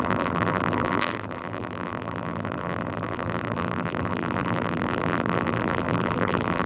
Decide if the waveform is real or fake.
fake